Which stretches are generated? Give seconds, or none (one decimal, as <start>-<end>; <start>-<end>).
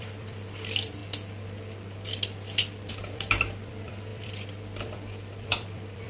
0.0-1.0; 2.9-6.1